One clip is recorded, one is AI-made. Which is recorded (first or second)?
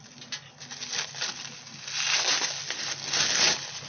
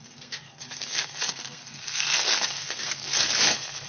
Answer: first